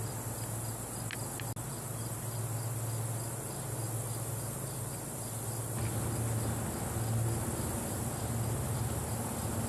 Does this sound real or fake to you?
real